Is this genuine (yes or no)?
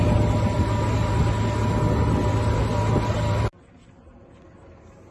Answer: yes